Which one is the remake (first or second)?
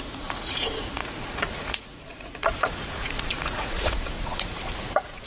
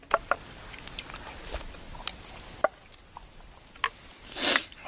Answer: first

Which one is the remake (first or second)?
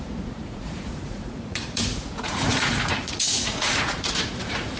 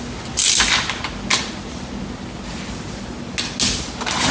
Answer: first